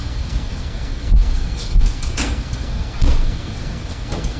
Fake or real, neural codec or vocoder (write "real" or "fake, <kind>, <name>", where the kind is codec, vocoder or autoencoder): fake, codec, SNAC